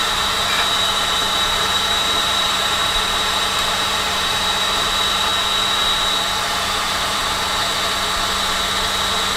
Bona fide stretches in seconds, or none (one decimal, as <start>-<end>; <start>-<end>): 5.3-6.4; 7.2-9.4